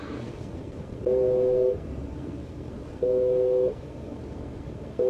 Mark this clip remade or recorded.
remade